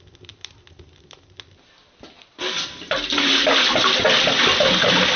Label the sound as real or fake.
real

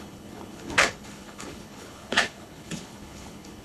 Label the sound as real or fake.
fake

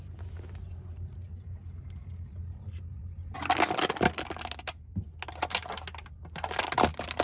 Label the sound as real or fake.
real